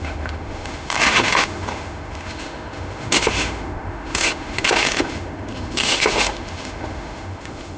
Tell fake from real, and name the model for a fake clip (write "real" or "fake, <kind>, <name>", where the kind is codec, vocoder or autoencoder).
fake, autoencoder, DAC-VAE